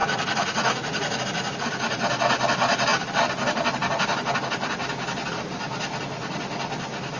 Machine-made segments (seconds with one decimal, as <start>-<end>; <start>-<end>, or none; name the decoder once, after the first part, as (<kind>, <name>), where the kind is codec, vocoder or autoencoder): 0.0-1.2 (vocoder, Vocos)